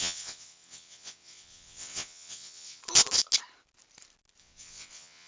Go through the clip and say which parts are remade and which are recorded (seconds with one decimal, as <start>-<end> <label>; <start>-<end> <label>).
0.0-2.8 remade; 2.8-4.4 recorded; 4.4-5.3 remade

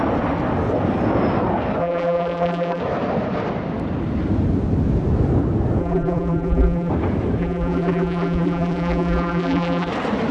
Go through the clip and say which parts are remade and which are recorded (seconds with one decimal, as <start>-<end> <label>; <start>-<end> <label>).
0.0-1.8 recorded; 1.8-2.8 remade; 2.8-5.8 recorded; 5.8-6.9 remade; 6.9-7.4 recorded; 7.4-9.9 remade; 9.9-10.3 recorded

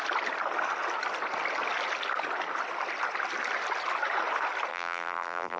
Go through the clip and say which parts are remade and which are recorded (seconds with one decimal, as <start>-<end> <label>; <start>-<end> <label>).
0.0-4.7 recorded; 4.7-5.6 remade